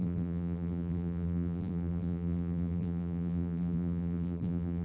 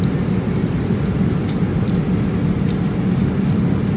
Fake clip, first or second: first